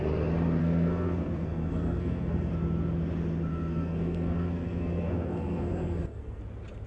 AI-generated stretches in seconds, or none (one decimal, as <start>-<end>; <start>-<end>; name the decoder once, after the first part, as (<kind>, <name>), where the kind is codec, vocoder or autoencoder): 0.6-2.5 (codec, SNAC); 3.5-6.4